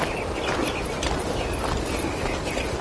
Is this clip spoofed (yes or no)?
no